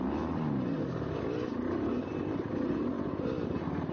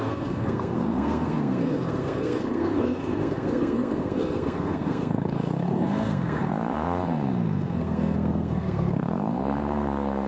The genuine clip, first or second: first